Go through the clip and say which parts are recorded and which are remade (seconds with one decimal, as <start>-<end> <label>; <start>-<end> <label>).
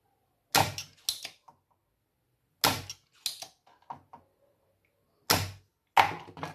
0.0-6.5 recorded